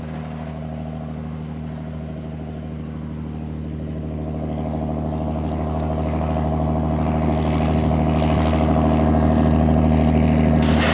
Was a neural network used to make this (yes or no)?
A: no